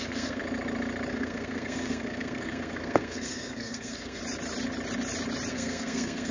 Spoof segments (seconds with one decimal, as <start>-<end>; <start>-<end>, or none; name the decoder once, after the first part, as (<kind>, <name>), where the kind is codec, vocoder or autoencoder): 0.0-0.4 (codec, SNAC); 1.1-4.2; 5.5-6.3